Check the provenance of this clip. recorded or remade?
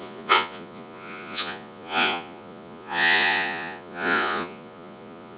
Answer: remade